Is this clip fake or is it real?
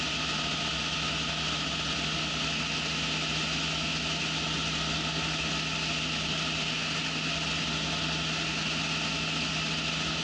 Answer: real